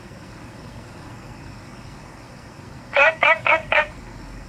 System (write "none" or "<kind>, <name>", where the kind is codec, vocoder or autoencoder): codec, SNAC